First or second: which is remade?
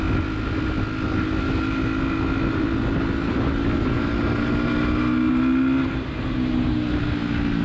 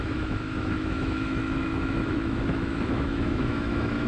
second